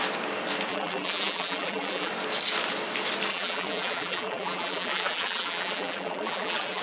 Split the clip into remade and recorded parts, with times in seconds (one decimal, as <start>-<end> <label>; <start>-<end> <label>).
0.0-0.7 recorded; 0.7-2.1 remade; 2.1-3.3 recorded; 3.3-6.8 remade